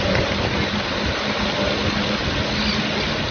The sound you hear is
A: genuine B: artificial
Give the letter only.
A